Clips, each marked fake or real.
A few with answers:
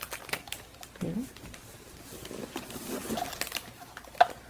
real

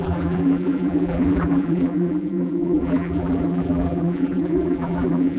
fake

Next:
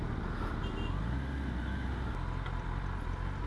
real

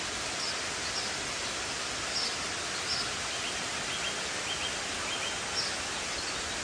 real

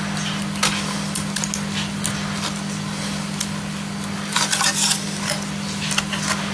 real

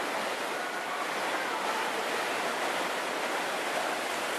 real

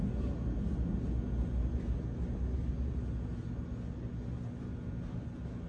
real